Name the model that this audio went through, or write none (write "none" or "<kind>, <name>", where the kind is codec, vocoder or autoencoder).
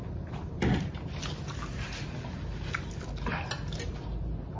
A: none